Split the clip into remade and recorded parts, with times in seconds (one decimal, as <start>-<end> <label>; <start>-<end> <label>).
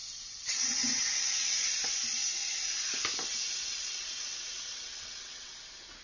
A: 0.0-1.7 remade; 1.7-3.7 recorded; 3.7-5.5 remade; 5.5-6.0 recorded